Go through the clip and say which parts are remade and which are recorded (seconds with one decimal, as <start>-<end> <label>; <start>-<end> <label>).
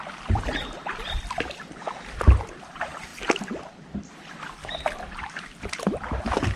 0.0-0.5 remade; 0.5-1.1 recorded; 1.1-3.1 remade; 3.1-4.1 recorded; 4.1-6.6 remade